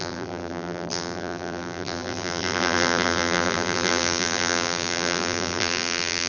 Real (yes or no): no